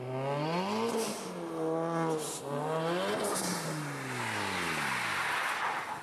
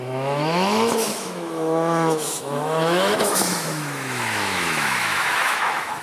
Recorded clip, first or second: first